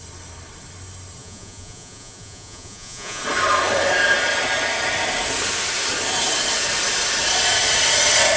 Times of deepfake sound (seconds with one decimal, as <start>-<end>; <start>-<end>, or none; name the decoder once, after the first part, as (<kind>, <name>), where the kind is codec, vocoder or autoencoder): 1.2-3.2 (vocoder, Vocos)